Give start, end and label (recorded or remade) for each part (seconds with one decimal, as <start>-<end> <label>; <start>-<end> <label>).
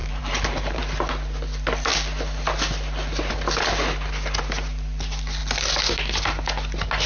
0.0-0.8 remade; 0.8-7.1 recorded